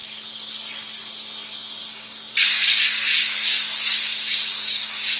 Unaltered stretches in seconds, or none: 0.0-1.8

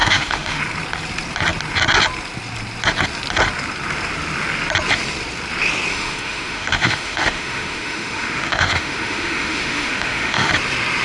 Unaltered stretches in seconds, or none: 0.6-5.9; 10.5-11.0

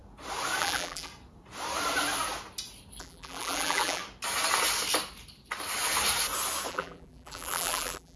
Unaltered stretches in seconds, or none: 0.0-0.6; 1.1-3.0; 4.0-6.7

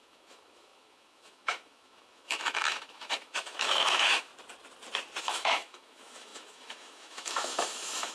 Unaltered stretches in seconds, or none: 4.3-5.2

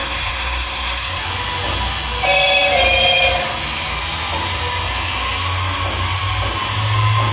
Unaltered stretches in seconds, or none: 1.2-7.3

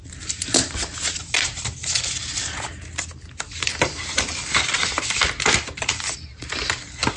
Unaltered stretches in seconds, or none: 0.0-7.2

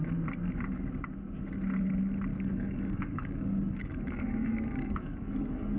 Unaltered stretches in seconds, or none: 0.0-2.3